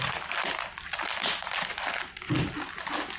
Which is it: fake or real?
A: real